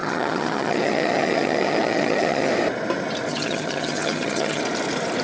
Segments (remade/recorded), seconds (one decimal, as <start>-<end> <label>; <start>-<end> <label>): 0.0-2.5 remade; 2.5-3.3 recorded; 3.3-4.6 remade; 4.6-5.2 recorded